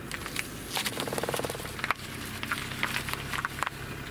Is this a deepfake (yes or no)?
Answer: no